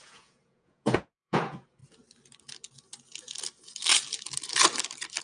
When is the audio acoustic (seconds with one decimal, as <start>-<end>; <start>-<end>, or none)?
1.8-5.2